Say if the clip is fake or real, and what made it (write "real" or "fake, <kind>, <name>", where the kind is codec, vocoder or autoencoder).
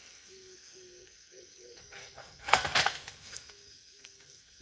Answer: fake, codec, SNAC